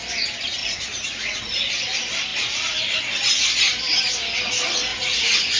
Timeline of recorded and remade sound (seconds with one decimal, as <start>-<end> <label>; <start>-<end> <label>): 0.0-0.6 recorded; 0.6-1.7 remade; 1.7-4.9 recorded; 4.9-5.6 remade